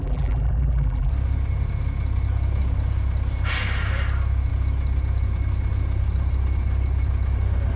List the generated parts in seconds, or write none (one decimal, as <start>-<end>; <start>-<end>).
0.0-1.1